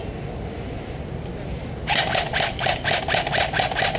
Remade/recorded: recorded